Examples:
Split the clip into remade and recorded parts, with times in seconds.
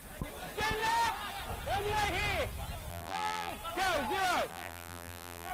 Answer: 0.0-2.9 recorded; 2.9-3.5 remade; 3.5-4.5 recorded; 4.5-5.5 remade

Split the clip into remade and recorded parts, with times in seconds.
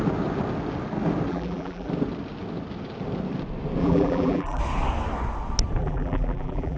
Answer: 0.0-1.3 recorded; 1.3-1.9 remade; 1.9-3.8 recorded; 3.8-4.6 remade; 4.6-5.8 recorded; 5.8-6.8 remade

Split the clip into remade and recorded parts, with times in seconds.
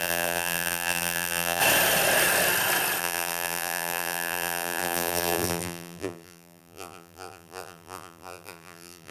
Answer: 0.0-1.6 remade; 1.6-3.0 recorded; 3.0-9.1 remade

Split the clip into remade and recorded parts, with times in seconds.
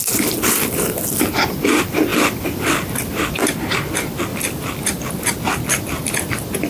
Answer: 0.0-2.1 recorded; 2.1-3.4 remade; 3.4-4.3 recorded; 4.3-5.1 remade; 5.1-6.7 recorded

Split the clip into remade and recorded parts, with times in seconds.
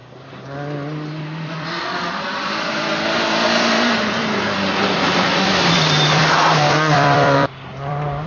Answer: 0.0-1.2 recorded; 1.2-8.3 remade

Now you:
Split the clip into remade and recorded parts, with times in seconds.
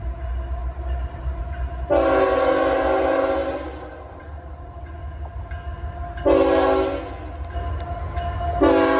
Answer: 0.0-0.6 recorded; 0.6-1.4 remade; 1.4-3.4 recorded; 3.4-5.0 remade; 5.0-9.0 recorded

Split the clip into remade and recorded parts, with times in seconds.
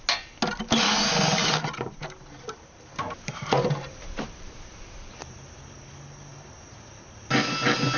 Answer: 0.0-1.4 recorded; 1.4-5.6 remade; 5.6-8.0 recorded